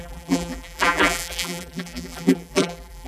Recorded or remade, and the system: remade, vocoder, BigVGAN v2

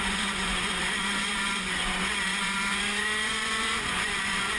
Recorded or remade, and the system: remade, vocoder, Vocos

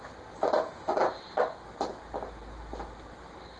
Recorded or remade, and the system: recorded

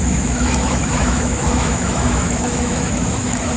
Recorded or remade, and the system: remade, autoencoder, DAC-VAE